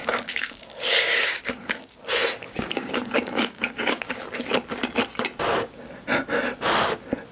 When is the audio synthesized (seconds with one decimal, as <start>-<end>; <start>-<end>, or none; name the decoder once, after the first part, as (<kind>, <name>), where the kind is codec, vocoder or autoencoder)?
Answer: 0.0-2.0 (codec, DAC); 2.4-4.2

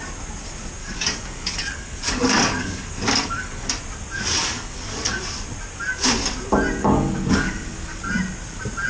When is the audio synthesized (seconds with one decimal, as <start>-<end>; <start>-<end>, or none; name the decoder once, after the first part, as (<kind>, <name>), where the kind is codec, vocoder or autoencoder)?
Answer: 0.8-3.7 (codec, DAC); 4.4-5.2; 6.8-8.0

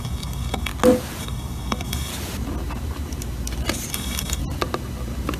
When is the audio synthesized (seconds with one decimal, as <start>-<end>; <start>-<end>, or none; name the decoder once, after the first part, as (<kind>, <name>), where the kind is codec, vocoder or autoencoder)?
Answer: 0.0-0.7 (codec, DAC); 1.2-2.1; 3.9-4.4

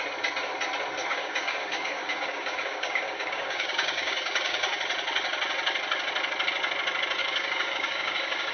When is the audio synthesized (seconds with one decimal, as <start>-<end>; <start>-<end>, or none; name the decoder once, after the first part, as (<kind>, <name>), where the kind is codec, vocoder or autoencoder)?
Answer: 1.1-4.8 (codec, DAC); 7.2-8.5

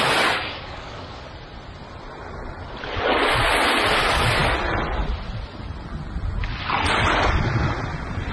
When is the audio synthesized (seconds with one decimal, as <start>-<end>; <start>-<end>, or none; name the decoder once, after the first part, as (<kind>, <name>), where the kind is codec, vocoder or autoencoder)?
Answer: 0.4-1.2 (codec, DAC)

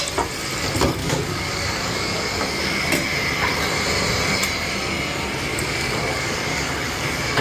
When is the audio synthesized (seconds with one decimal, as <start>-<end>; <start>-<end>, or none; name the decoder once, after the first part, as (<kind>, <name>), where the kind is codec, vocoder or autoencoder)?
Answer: 1.0-2.9 (codec, DAC); 5.5-7.4